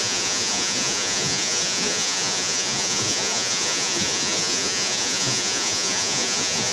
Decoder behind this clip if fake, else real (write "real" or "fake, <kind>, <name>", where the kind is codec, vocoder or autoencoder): fake, vocoder, Vocos